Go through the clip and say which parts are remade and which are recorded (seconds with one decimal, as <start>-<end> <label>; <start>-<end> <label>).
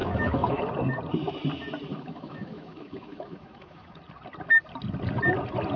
0.0-0.6 remade; 0.6-1.9 recorded; 1.9-4.0 remade; 4.0-5.8 recorded